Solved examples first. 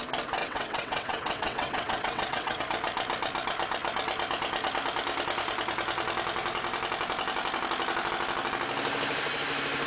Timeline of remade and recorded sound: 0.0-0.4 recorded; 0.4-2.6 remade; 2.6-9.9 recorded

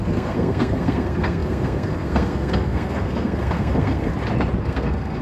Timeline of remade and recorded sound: 0.0-4.1 remade; 4.1-4.6 recorded; 4.6-5.2 remade

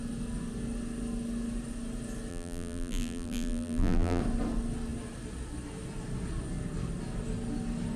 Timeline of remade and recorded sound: 0.0-2.3 recorded; 2.3-4.2 remade; 4.2-8.0 recorded

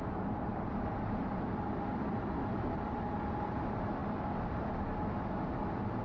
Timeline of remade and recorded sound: 0.0-0.5 recorded; 0.5-3.6 remade; 3.6-6.0 recorded

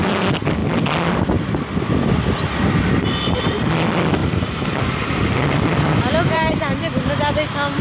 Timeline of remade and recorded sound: 0.0-4.2 recorded; 4.2-6.8 remade; 6.8-7.8 recorded